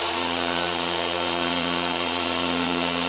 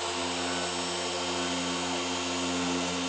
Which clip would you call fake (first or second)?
first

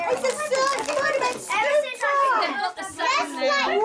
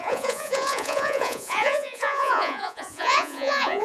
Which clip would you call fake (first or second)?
second